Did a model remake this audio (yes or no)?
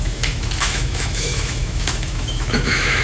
yes